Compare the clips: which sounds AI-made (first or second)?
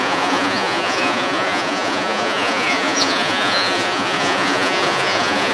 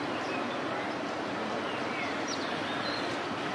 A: first